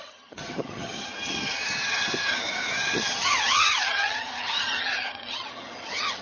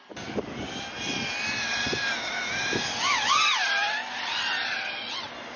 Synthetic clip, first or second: first